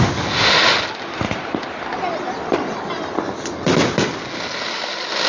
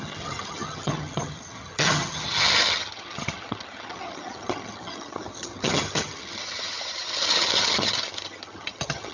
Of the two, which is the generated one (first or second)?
second